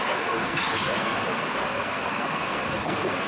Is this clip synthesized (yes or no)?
yes